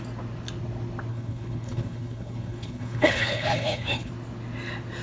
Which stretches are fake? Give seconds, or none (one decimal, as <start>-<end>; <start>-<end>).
1.1-4.1